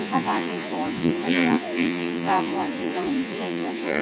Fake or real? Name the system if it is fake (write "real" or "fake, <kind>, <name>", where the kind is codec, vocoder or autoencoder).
fake, vocoder, Vocos